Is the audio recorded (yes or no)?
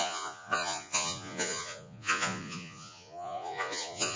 no